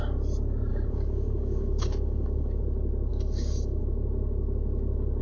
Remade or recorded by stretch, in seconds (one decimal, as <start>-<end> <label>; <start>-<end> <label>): 0.0-0.7 recorded; 0.7-2.6 remade; 2.6-3.1 recorded; 3.1-3.8 remade; 3.8-5.2 recorded

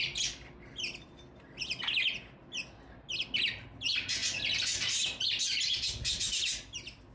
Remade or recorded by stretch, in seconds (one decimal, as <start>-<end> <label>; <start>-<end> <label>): 0.0-7.1 recorded

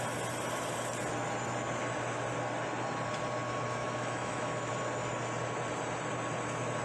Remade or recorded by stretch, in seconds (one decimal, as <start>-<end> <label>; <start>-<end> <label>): 0.0-3.8 recorded; 3.8-4.7 remade; 4.7-6.8 recorded

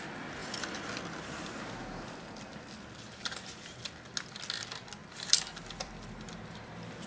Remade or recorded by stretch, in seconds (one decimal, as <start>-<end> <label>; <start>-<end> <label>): 0.0-5.0 recorded; 5.0-6.4 remade; 6.4-7.1 recorded

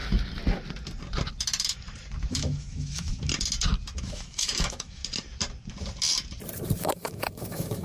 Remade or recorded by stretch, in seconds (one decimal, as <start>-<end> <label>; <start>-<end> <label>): 0.0-2.3 recorded; 2.3-3.1 remade; 3.1-4.0 recorded; 4.0-5.0 remade; 5.0-6.8 recorded; 6.8-7.8 remade